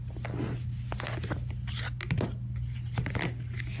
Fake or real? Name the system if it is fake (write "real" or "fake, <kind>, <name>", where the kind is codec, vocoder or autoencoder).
real